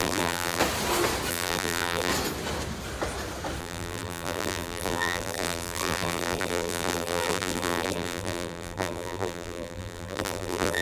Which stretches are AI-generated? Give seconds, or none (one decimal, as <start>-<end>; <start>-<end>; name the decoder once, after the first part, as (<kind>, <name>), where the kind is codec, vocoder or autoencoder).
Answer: 0.0-0.6 (vocoder, BigVGAN v2); 1.3-2.1; 3.6-10.8